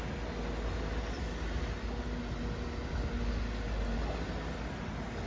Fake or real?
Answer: real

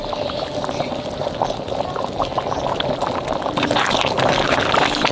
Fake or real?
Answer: real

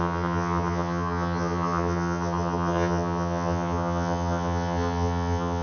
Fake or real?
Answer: fake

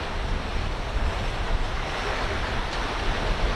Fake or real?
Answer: real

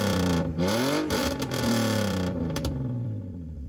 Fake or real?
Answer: fake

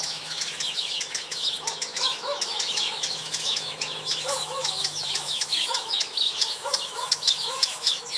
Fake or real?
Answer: fake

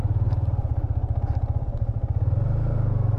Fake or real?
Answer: real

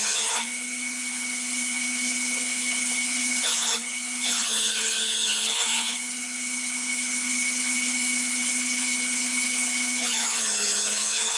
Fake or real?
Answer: fake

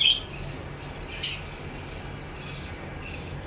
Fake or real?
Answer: real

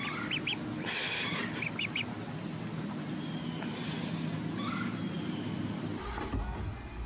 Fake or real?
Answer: real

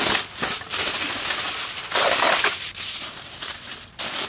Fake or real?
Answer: real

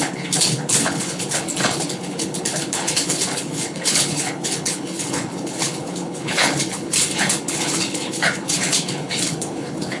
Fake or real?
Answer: fake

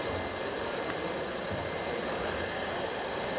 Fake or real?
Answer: real